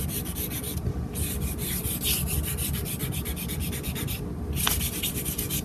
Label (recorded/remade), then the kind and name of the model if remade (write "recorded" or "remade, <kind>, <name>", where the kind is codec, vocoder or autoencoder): remade, vocoder, BigVGAN v2